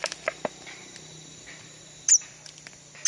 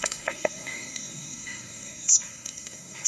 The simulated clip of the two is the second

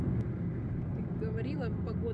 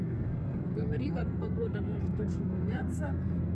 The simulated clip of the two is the second